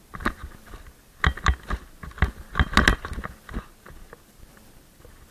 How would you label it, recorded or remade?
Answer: recorded